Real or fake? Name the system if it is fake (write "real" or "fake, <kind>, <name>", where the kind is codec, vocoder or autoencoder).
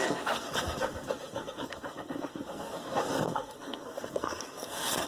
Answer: fake, codec, SNAC